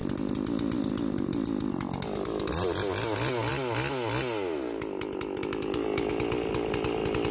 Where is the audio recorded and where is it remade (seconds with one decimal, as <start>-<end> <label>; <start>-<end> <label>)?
0.0-7.3 recorded